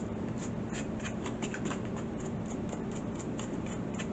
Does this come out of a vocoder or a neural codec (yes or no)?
yes